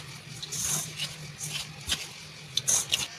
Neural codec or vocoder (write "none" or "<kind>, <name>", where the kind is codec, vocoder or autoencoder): none